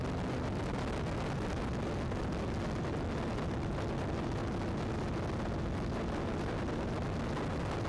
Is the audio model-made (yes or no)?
no